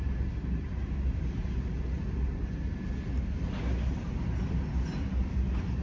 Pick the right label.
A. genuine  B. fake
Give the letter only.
A